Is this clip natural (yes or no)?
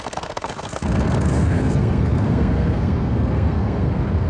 no